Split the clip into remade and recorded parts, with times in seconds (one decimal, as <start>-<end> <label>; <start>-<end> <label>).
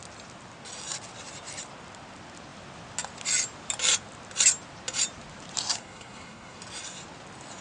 0.0-5.7 recorded; 5.7-6.6 remade; 6.6-7.6 recorded